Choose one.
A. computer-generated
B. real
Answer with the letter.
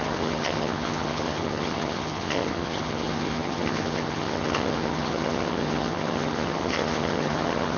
A